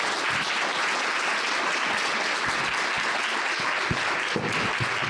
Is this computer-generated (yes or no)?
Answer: no